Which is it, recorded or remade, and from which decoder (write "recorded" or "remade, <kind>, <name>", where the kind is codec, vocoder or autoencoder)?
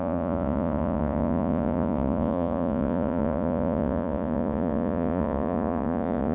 remade, vocoder, Vocos